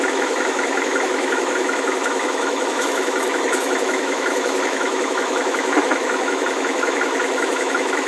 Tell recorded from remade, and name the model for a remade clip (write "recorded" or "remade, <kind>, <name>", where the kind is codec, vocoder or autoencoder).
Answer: remade, autoencoder, DAC-VAE